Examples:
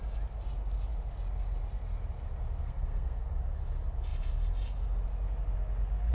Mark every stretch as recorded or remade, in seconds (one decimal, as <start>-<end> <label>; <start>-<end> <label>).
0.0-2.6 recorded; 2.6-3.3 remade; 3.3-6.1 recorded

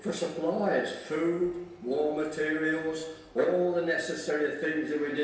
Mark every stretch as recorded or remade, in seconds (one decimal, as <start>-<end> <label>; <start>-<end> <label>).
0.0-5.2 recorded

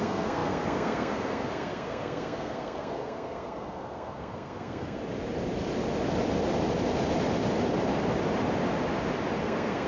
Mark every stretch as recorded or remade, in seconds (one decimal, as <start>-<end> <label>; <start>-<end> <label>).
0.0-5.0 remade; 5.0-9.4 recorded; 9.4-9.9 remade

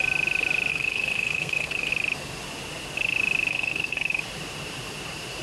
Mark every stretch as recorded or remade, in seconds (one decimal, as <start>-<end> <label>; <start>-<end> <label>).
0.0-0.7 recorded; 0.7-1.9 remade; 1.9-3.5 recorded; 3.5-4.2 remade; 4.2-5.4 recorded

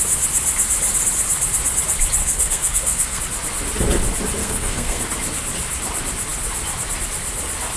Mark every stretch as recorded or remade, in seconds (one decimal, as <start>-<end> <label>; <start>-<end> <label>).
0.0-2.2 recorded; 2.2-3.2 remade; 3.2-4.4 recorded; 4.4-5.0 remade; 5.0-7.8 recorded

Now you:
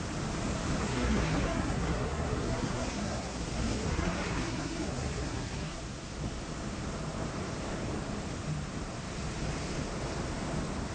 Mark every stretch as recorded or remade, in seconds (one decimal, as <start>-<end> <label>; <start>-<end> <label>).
0.0-0.8 recorded; 0.8-5.8 remade; 5.8-10.9 recorded